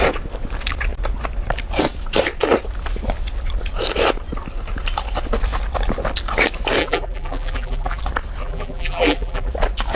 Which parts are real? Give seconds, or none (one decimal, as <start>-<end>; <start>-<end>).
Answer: 0.0-6.8; 8.0-8.4; 9.5-10.0